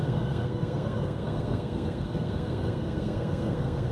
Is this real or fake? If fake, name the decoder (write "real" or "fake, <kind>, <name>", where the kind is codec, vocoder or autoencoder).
fake, codec, SNAC